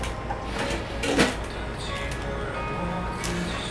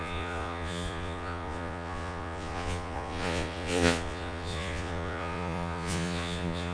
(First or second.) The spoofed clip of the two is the second